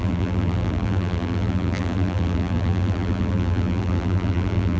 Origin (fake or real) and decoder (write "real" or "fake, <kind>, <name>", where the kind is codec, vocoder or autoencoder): fake, vocoder, BigVGAN v2